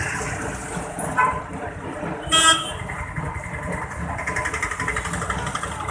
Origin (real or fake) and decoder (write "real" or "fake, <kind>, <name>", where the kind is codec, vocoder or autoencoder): real